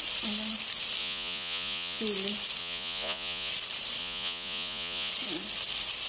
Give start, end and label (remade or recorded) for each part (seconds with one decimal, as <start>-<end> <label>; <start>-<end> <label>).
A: 0.0-1.0 recorded; 1.0-2.0 remade; 2.0-2.6 recorded; 2.6-3.5 remade; 3.5-4.0 recorded; 4.0-5.1 remade; 5.1-6.1 recorded